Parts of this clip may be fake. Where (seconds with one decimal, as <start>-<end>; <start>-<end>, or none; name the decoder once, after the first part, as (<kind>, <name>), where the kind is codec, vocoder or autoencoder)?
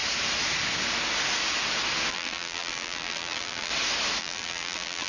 2.1-3.7 (vocoder, BigVGAN v2); 4.2-5.1